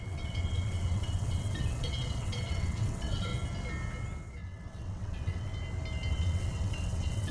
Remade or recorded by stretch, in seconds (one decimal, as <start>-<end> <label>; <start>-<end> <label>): 0.0-3.3 remade; 3.3-4.3 recorded; 4.3-5.5 remade; 5.5-6.1 recorded; 6.1-7.3 remade